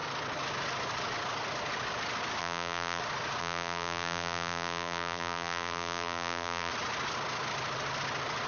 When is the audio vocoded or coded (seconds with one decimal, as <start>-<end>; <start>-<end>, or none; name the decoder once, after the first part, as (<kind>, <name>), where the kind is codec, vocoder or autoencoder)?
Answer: 2.4-3.0 (vocoder, BigVGAN v2); 3.4-6.7